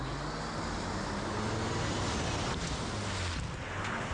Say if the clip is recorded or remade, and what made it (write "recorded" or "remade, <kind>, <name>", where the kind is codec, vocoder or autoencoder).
recorded